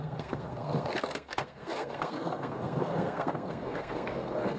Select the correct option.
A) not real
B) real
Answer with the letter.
A